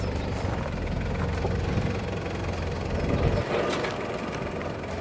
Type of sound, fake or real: real